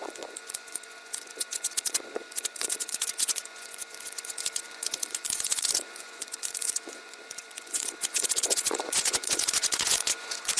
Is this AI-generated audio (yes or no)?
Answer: yes